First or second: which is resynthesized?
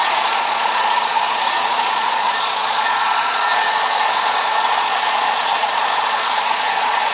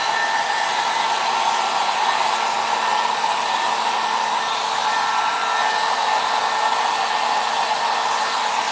first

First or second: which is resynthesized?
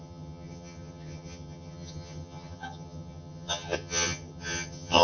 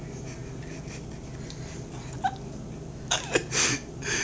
first